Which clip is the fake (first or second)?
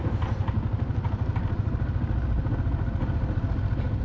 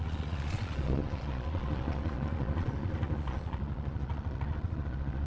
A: second